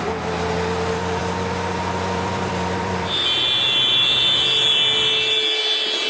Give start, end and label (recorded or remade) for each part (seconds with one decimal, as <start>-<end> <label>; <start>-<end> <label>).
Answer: 0.0-1.2 recorded; 1.2-3.2 remade; 3.2-6.1 recorded